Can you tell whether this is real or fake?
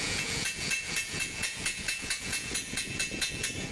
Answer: fake